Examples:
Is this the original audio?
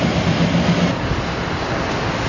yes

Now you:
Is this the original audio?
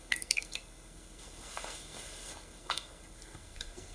no